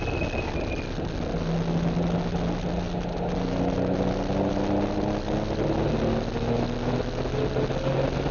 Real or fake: real